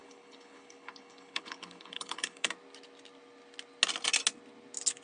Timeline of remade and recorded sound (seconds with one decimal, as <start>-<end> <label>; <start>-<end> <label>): 0.0-2.5 remade; 2.5-5.0 recorded